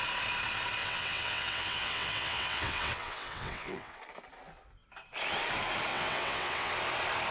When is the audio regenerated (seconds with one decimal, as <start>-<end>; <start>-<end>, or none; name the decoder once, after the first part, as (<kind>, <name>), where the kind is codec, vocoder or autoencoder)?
0.8-4.0 (vocoder, WaveNeXt); 5.9-6.7